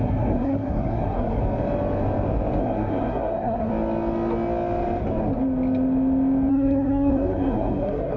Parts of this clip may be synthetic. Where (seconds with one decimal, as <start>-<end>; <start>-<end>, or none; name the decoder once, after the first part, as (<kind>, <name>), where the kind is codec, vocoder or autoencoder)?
0.0-1.4 (codec, SNAC); 2.6-3.7; 6.5-8.2